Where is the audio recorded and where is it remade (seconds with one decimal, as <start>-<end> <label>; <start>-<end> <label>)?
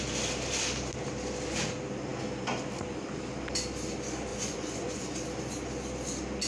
0.0-4.3 recorded; 4.3-5.0 remade; 5.0-6.5 recorded